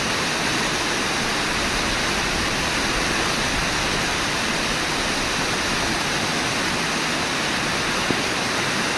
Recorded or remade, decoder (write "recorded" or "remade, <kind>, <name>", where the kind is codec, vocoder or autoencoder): recorded